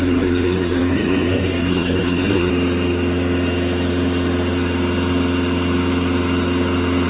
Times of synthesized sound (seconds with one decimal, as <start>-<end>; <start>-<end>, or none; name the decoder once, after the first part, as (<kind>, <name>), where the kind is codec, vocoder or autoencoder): 0.0-2.5 (codec, SNAC)